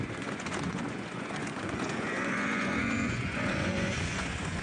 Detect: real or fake fake